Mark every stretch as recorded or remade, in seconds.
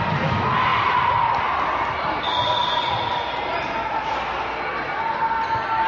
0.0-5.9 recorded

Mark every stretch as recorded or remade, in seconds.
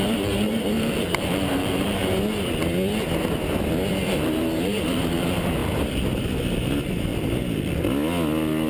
0.0-2.0 remade; 2.0-4.1 recorded; 4.1-5.6 remade; 5.6-6.2 recorded; 6.2-7.1 remade; 7.1-8.7 recorded